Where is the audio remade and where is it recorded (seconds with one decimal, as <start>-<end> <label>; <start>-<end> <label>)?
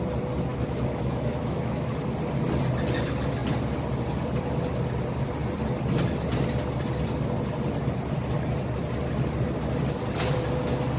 0.0-0.5 recorded; 0.5-1.9 remade; 1.9-11.0 recorded